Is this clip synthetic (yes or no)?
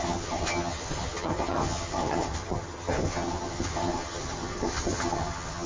yes